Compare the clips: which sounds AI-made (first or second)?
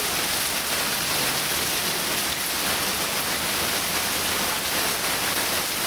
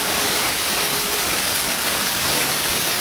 second